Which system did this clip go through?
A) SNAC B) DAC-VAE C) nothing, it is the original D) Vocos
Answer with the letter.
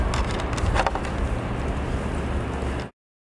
C